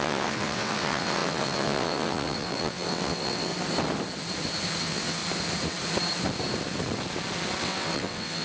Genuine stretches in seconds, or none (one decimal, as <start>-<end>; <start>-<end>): 3.5-4.8; 5.2-7.6